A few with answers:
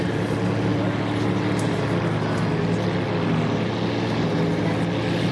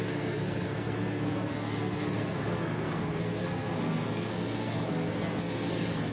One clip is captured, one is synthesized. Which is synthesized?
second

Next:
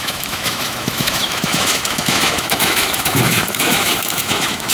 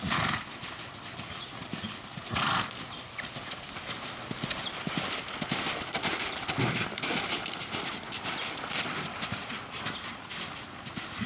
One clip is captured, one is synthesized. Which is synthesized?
first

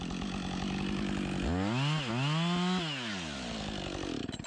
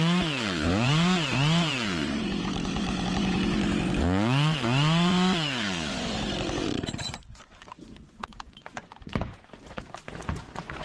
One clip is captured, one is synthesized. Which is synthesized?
second